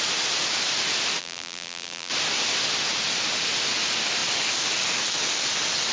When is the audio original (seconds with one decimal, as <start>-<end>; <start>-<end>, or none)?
0.0-1.2; 2.1-5.9